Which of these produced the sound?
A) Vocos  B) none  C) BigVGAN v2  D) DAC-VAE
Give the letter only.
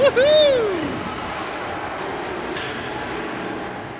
B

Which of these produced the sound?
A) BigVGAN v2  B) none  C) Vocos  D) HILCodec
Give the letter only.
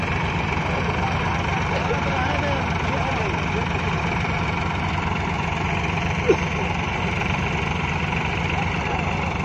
B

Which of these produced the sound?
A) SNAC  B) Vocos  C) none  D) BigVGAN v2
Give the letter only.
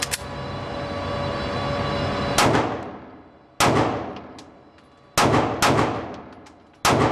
C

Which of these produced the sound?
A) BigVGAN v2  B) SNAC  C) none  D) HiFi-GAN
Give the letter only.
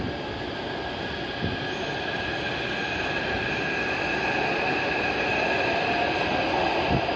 C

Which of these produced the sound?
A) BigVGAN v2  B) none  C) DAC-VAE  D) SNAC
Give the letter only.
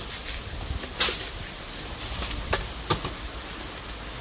B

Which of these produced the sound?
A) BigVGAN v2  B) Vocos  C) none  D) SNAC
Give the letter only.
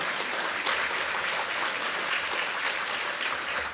C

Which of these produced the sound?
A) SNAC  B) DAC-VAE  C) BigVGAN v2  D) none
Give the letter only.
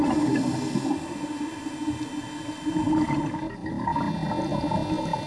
D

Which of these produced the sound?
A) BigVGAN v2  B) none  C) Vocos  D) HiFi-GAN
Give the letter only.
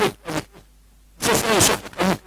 B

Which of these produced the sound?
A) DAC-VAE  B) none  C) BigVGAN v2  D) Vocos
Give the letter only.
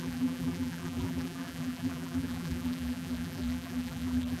C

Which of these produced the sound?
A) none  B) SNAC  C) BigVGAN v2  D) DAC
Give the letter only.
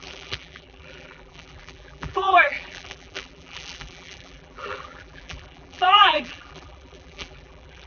C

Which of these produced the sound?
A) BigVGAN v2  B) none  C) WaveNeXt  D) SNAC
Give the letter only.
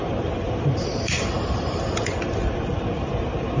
A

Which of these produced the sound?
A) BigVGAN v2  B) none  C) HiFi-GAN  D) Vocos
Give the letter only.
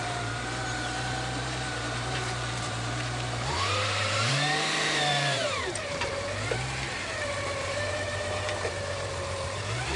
A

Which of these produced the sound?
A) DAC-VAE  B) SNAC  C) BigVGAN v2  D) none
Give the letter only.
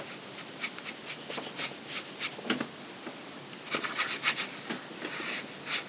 D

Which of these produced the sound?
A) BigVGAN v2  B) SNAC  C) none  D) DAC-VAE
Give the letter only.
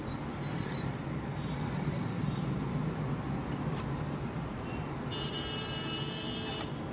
C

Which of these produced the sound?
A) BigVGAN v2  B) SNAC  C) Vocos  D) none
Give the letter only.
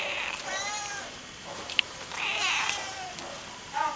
A